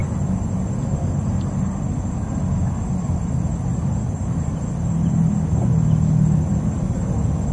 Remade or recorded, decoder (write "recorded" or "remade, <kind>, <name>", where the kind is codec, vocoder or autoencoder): recorded